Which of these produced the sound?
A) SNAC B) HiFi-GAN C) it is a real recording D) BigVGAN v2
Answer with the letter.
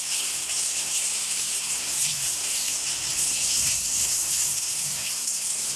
A